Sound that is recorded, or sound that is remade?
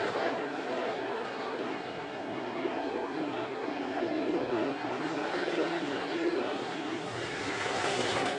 remade